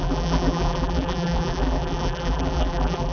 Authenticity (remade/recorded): remade